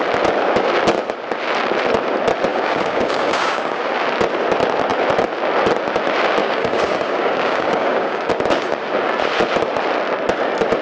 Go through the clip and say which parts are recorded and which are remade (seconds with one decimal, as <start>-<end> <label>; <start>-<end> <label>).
0.0-2.5 recorded; 2.5-3.8 remade; 3.8-6.4 recorded; 6.4-8.3 remade; 8.3-10.8 recorded